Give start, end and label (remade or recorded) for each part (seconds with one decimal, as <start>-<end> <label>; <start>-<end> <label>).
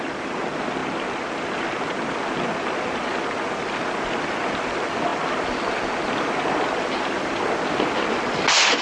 0.0-8.8 recorded